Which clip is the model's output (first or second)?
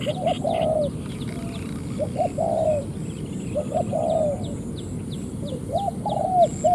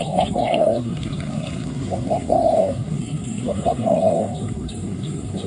second